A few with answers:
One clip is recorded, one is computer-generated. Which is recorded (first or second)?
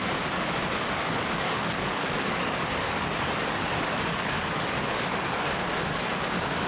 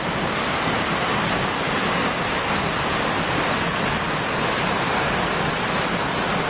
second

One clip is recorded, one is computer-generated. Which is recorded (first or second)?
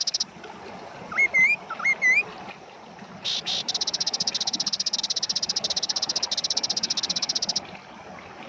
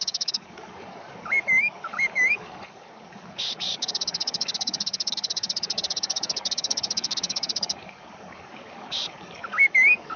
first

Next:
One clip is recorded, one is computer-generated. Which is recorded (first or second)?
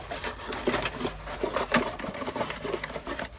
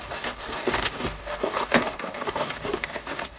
first